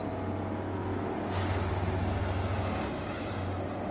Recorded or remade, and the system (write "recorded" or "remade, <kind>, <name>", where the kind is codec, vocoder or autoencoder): recorded